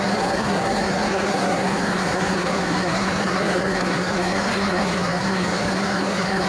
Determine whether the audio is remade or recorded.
remade